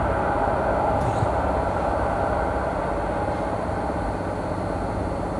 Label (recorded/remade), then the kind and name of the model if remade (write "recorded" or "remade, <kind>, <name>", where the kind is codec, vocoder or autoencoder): recorded